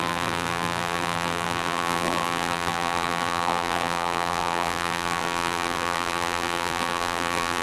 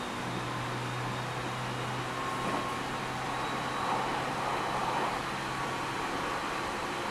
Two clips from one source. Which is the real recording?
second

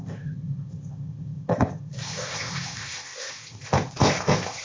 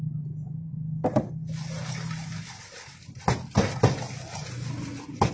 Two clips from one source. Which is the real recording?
second